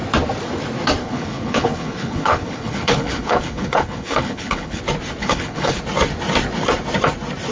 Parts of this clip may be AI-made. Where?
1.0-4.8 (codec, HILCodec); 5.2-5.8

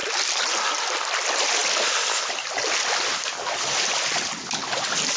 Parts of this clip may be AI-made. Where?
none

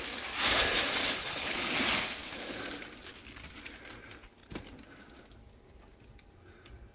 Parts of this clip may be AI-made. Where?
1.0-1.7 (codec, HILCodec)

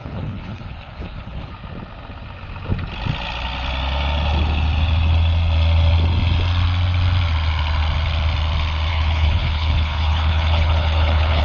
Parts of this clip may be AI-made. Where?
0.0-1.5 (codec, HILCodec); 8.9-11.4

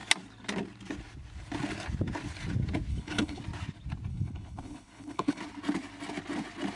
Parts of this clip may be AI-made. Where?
2.9-3.4 (codec, HILCodec); 4.1-5.4